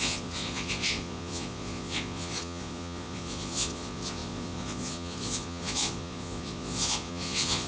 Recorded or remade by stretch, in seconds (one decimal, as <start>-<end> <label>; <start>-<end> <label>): 0.0-7.7 remade

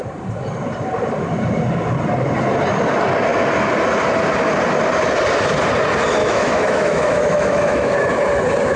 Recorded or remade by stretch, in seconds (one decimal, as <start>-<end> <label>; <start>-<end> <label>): 0.0-6.2 recorded; 6.2-7.9 remade; 7.9-8.8 recorded

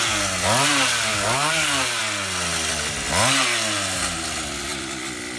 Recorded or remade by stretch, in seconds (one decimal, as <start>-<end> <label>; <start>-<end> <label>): 0.0-1.1 recorded; 1.1-2.0 remade; 2.0-5.4 recorded